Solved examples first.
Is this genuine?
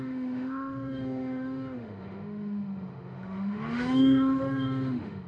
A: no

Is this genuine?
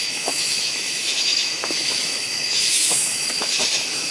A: no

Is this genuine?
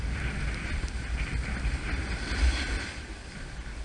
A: yes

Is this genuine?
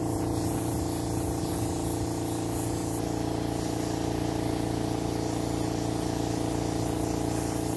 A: yes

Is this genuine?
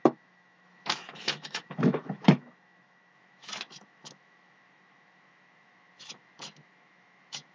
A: no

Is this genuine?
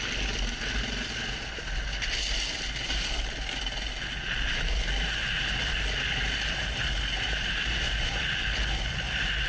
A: yes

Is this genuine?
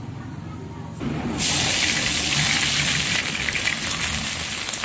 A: yes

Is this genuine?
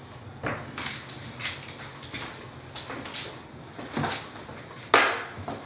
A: yes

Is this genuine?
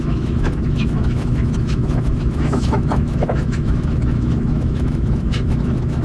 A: no